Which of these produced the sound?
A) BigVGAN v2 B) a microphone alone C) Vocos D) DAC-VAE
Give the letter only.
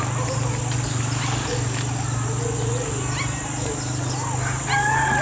B